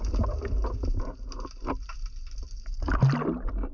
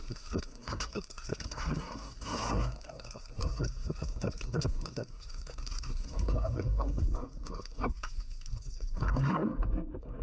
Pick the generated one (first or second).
second